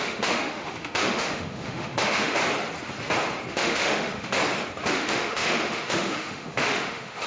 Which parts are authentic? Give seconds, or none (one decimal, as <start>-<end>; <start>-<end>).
2.4-3.5; 4.4-4.9